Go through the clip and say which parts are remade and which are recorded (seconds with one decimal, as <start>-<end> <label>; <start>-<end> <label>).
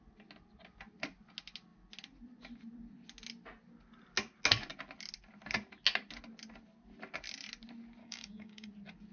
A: 0.0-8.0 recorded; 8.0-8.7 remade; 8.7-9.1 recorded